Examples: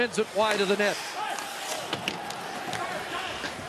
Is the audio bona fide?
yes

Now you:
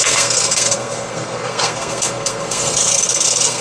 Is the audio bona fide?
no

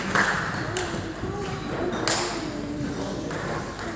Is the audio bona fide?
yes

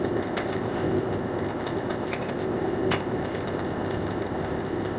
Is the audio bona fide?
no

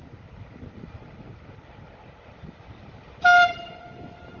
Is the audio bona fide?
yes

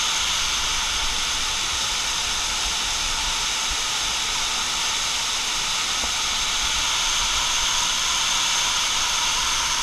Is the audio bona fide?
yes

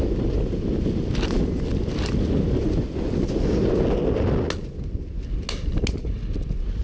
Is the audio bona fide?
yes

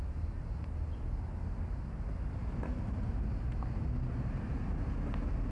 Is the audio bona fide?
yes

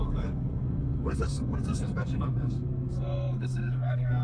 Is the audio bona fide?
no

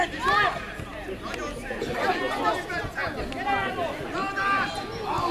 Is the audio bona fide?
yes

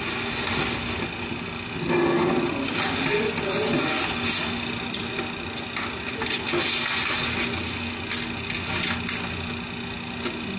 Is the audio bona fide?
yes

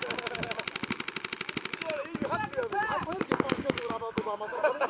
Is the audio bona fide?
no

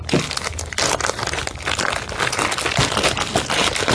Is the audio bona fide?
yes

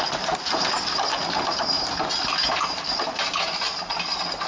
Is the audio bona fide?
yes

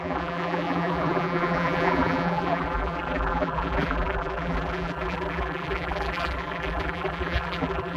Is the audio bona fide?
no